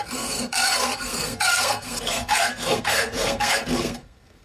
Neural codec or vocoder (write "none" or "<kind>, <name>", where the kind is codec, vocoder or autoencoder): codec, SNAC